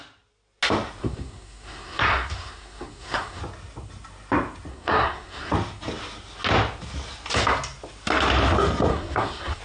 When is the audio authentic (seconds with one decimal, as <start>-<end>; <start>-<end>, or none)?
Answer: 0.0-1.0; 3.4-4.7; 5.5-8.9